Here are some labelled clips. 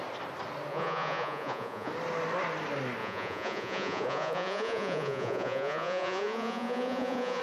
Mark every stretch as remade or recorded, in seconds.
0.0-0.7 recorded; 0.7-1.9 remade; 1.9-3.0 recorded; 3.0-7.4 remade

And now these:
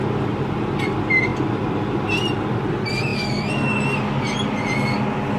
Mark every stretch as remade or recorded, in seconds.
0.0-5.4 recorded

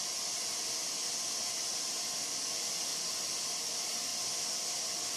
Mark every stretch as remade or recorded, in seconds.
0.0-5.2 recorded

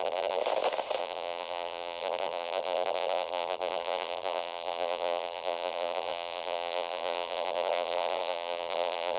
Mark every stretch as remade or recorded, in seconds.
0.0-0.4 remade; 0.4-1.0 recorded; 1.0-9.2 remade

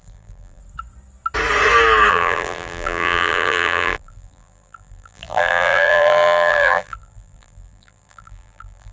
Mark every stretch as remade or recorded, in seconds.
0.0-0.6 remade; 0.6-2.1 recorded; 2.1-8.9 remade

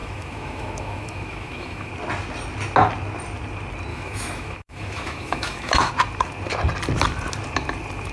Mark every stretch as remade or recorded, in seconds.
0.0-1.9 remade; 1.9-3.9 recorded; 3.9-5.9 remade; 5.9-8.1 recorded